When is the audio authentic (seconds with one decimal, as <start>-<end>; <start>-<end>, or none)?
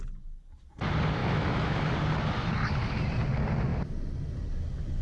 0.0-1.2; 1.8-5.0